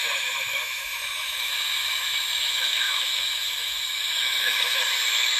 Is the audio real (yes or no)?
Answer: no